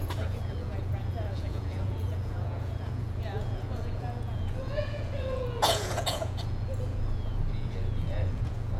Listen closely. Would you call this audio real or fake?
fake